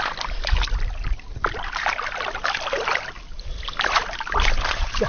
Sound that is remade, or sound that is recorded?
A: recorded